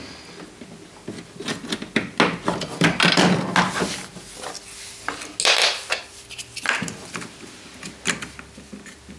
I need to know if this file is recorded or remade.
recorded